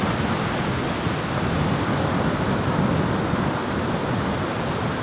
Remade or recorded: recorded